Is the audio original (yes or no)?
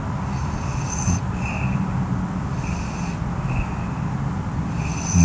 yes